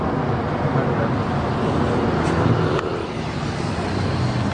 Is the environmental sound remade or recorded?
recorded